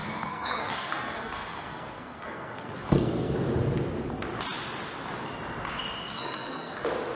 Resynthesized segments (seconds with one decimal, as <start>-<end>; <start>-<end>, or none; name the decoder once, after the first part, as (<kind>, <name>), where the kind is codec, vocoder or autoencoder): 0.0-3.3 (codec, SNAC); 6.1-6.8